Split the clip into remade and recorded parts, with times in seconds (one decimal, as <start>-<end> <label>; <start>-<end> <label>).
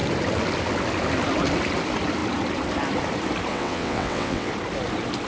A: 0.0-3.5 recorded; 3.5-4.5 remade; 4.5-5.3 recorded